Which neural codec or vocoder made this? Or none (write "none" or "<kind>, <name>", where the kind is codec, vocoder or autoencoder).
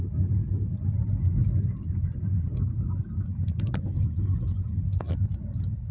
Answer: none